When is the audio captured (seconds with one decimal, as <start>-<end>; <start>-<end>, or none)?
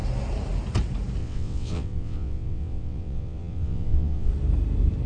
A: 0.0-1.2; 4.3-5.1